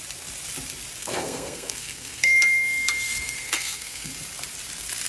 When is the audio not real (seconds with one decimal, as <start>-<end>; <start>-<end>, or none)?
1.0-4.1